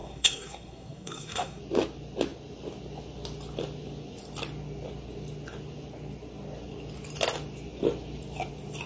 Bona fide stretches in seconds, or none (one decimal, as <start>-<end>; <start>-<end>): 1.6-8.9

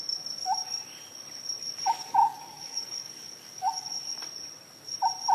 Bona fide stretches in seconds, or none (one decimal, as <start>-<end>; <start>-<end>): 0.0-2.0; 4.0-5.3

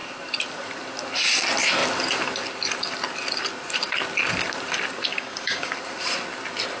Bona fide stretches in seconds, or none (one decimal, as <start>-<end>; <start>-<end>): 0.0-5.1; 5.7-6.8

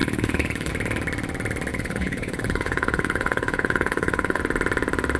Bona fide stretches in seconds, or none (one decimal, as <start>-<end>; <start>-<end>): 0.7-1.7; 4.4-5.2

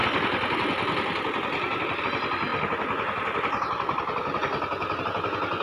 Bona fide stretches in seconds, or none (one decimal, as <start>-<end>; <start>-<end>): 0.0-5.6

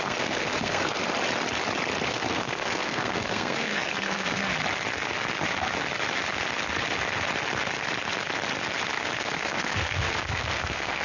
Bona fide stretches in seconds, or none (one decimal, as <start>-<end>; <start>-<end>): 1.0-2.1; 4.4-9.2